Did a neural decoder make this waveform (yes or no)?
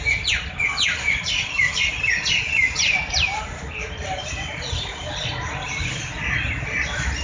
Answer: no